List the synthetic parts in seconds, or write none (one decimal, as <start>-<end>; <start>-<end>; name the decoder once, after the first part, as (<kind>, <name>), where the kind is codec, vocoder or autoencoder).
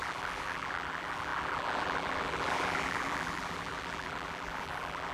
0.0-5.1 (vocoder, BigVGAN v2)